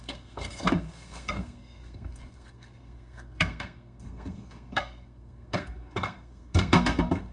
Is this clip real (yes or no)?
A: no